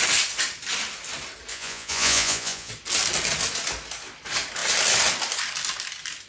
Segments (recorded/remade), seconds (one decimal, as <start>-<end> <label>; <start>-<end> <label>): 0.0-1.5 recorded; 1.5-2.7 remade; 2.7-6.3 recorded

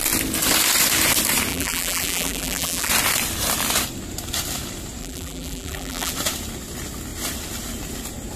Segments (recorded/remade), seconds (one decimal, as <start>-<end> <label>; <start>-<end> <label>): 0.0-1.5 recorded; 1.5-2.9 remade; 2.9-5.0 recorded; 5.0-6.1 remade; 6.1-8.4 recorded

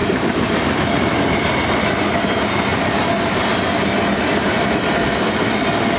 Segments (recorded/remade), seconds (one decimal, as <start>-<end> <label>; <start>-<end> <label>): 0.0-6.0 recorded

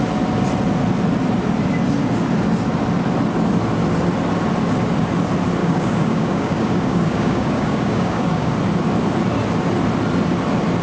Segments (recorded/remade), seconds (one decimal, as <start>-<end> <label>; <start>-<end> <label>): 0.0-5.6 recorded; 5.6-8.5 remade; 8.5-10.8 recorded

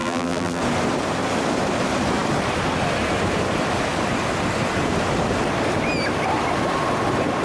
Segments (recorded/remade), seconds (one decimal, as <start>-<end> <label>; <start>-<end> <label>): 0.0-0.6 remade; 0.6-7.4 recorded

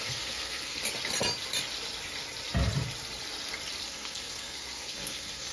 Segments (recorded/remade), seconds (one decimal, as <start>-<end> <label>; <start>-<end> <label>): 0.0-0.8 remade; 0.8-3.8 recorded; 3.8-5.5 remade

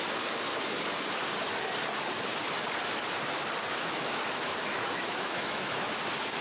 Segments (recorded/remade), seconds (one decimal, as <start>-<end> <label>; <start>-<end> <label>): 0.0-3.7 recorded; 3.7-5.9 remade; 5.9-6.4 recorded

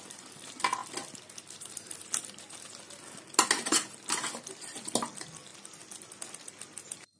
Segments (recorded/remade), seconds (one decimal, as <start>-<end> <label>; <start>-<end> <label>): 0.0-7.2 recorded